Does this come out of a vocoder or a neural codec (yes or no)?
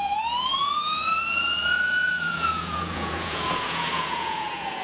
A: yes